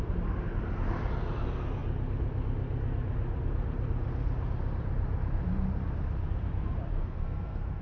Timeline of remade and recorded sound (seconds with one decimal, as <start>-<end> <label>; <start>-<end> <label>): 0.0-6.9 recorded; 6.9-7.8 remade